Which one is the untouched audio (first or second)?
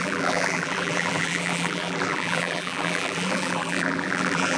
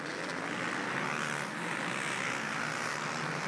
second